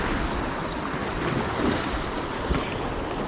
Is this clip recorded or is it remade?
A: recorded